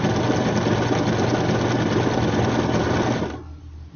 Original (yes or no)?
yes